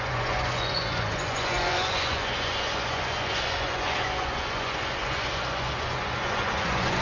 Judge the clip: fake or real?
fake